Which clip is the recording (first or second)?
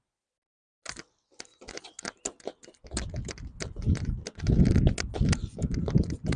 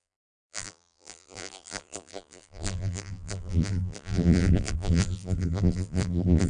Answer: first